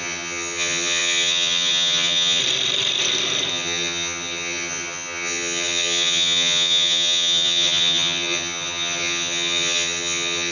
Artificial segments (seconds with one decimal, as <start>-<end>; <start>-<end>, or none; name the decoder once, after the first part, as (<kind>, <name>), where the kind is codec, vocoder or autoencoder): 0.0-2.4 (vocoder, HiFi-GAN); 3.5-10.5